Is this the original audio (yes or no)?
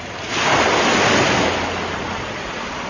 yes